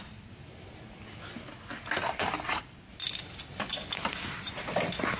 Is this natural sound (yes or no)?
yes